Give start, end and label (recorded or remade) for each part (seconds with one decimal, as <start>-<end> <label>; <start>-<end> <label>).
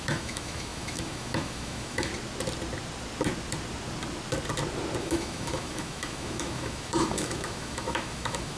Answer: 0.0-2.1 remade; 2.1-5.0 recorded; 5.0-8.6 remade